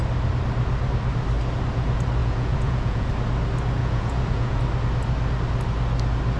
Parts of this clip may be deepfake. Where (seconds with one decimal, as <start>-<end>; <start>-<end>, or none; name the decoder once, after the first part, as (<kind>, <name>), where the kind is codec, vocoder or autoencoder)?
2.2-3.1 (vocoder, Vocos); 3.8-4.6